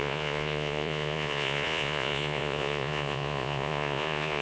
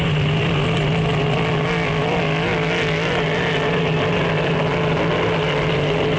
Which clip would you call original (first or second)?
second